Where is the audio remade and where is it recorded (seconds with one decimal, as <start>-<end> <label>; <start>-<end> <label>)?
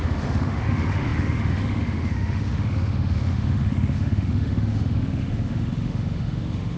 0.0-6.8 remade